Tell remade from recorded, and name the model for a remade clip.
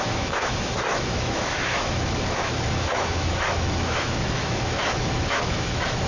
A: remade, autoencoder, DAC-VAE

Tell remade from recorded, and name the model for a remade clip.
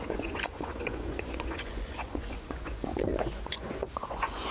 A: remade, vocoder, Vocos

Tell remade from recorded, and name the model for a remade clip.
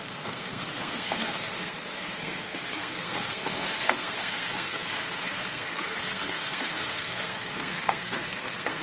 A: remade, codec, SNAC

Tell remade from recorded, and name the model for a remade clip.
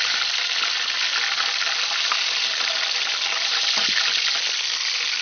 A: recorded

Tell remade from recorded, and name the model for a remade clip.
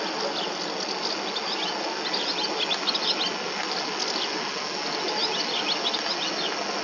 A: recorded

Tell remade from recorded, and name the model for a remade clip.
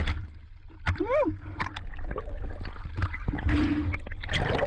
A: recorded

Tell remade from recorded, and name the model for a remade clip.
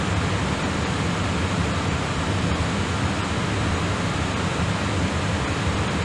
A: recorded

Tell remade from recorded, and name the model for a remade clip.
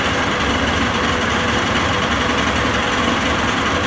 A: recorded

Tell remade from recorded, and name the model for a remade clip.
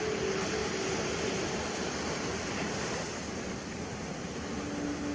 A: recorded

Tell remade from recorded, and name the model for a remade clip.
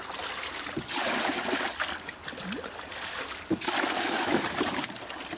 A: recorded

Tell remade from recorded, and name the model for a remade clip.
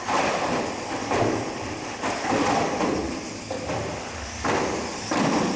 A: recorded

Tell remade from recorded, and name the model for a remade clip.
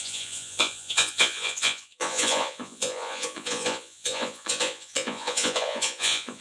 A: remade, vocoder, Vocos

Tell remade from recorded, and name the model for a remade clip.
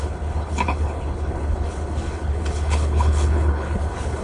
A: remade, codec, HILCodec